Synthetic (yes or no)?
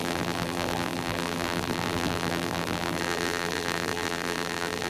yes